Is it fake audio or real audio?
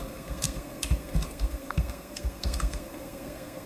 fake